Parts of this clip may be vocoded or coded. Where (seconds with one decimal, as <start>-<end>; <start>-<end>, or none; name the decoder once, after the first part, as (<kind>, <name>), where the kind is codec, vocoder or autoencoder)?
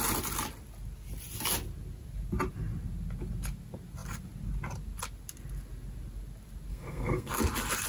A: 6.7-7.4 (codec, SNAC)